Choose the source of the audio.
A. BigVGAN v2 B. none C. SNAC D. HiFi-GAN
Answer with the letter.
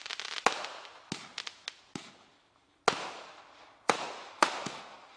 B